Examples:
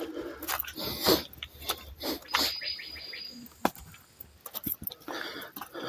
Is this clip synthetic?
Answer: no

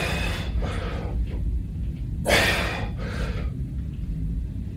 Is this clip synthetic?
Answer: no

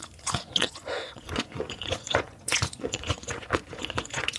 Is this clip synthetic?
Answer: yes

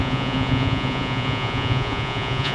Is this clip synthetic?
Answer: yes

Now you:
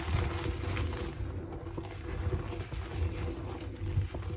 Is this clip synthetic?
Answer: no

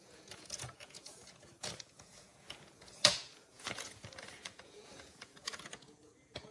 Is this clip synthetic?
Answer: yes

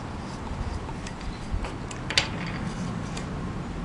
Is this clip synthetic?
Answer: no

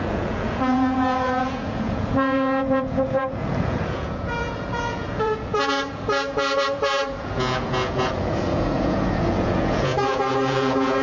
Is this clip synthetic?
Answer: yes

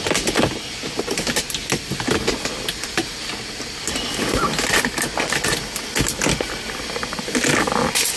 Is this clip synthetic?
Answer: no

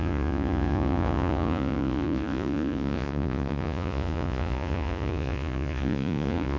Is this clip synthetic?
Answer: yes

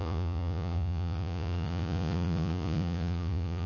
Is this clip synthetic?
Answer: yes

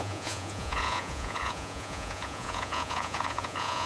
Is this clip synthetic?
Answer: yes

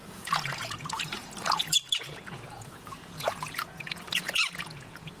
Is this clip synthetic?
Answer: yes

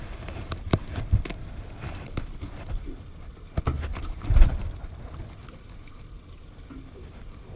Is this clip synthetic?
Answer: no